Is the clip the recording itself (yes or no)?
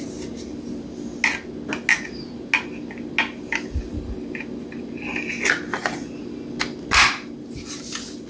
yes